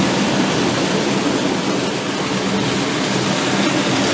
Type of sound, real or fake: real